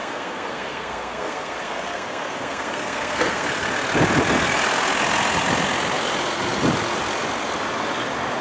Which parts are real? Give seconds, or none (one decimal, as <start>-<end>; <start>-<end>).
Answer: 3.5-8.4